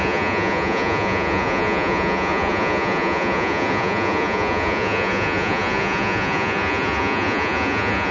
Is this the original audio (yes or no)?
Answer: no